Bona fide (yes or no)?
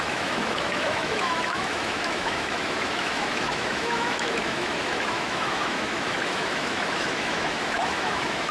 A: no